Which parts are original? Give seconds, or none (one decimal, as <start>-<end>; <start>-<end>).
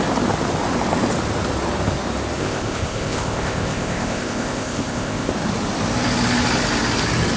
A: 0.0-2.4; 5.3-7.4